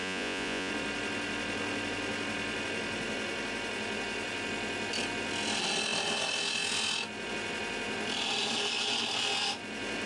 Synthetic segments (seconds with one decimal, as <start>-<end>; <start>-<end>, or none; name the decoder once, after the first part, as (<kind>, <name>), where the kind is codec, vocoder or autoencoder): 0.0-0.7 (vocoder, Vocos)